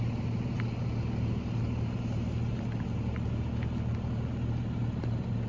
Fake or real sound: real